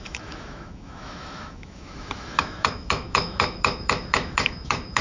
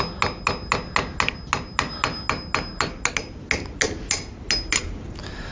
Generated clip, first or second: first